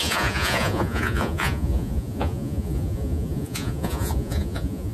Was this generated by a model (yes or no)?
yes